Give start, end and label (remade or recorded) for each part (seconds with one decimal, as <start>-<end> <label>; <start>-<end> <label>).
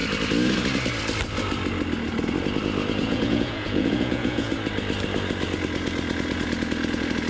0.0-3.0 recorded; 3.0-4.5 remade; 4.5-7.3 recorded